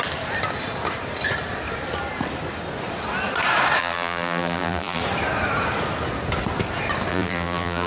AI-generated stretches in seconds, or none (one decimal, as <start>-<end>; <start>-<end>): 3.8-5.0; 7.1-7.9